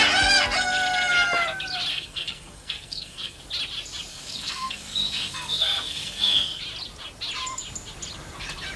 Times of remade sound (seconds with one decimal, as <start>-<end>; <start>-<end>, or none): 1.9-3.4; 4.1-6.6